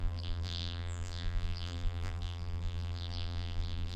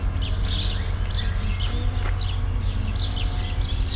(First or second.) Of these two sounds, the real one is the second